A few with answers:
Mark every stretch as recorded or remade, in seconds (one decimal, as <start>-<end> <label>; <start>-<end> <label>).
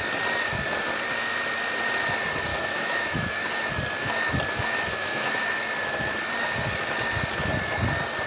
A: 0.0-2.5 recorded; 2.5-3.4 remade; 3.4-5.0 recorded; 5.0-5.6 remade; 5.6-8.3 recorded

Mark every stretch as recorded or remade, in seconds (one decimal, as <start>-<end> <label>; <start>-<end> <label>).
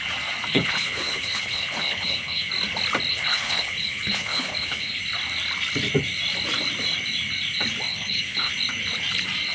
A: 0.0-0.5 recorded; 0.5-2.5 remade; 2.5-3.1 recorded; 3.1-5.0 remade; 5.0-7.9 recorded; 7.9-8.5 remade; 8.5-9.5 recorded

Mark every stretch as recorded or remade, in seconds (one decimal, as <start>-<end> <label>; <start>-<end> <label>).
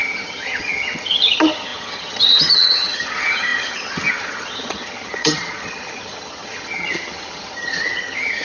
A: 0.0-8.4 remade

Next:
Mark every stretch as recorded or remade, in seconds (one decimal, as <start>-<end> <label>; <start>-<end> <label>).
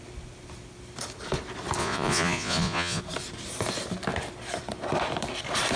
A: 0.0-1.8 recorded; 1.8-3.0 remade; 3.0-5.8 recorded